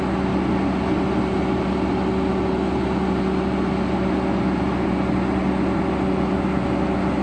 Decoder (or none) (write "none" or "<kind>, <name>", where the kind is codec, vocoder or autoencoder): none